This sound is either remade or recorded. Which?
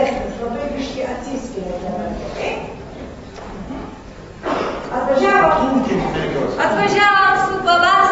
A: recorded